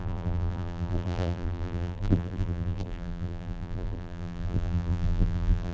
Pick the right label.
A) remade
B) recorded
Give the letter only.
A